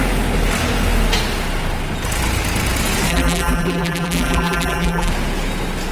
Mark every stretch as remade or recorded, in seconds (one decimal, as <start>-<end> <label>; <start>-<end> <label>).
0.0-3.1 recorded; 3.1-5.1 remade; 5.1-5.9 recorded